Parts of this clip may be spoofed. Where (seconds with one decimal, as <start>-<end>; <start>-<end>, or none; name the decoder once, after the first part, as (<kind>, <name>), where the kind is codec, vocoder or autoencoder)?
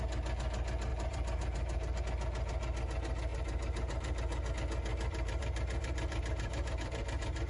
0.9-2.0 (vocoder, BigVGAN v2); 3.3-4.5; 4.9-7.5